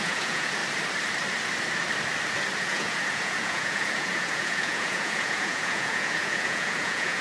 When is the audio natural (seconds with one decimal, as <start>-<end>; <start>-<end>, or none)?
0.6-2.6